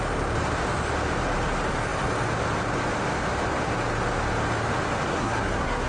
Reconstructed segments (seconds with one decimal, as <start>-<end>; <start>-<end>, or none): 5.1-5.9